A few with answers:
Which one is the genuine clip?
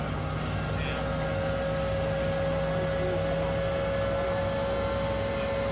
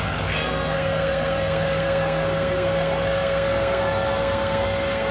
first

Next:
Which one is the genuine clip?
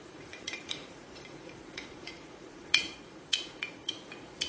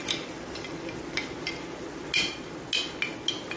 second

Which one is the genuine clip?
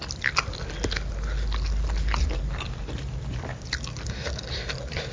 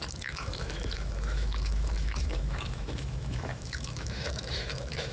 first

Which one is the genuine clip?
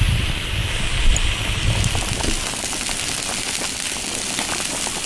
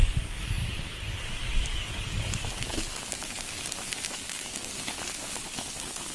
first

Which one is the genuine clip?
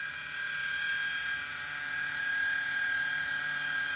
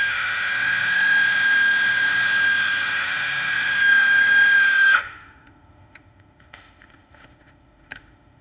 first